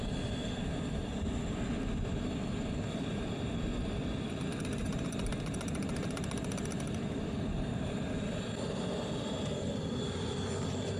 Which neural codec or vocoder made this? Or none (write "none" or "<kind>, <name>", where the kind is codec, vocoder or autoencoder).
none